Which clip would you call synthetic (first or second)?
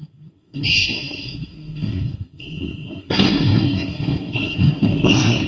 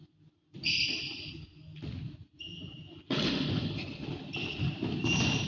first